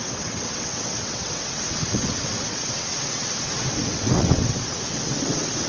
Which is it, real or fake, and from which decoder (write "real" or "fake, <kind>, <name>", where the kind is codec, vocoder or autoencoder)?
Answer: fake, vocoder, WaveNeXt